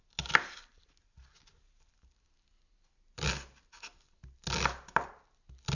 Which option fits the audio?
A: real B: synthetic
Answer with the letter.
A